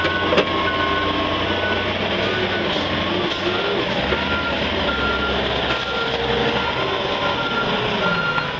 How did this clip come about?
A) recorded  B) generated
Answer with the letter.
A